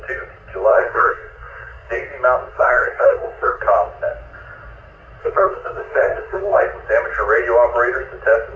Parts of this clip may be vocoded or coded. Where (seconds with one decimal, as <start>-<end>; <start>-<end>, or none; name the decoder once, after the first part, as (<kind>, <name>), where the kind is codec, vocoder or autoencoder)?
0.7-1.9 (codec, SNAC); 2.5-3.6; 5.2-6.6